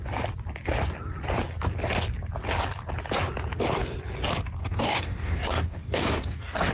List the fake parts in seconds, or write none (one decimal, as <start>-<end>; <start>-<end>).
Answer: 4.6-6.7